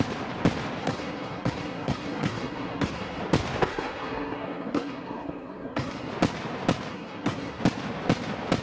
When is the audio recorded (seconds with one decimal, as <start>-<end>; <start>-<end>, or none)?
0.0-0.8; 3.2-3.7; 6.1-6.9; 7.6-8.6